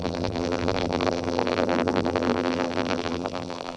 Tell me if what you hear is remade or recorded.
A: remade